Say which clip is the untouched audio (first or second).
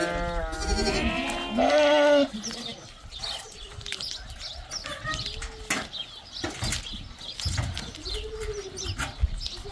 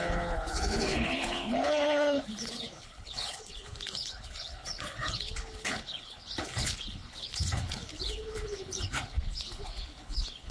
first